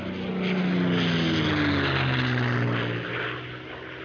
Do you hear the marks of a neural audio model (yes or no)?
no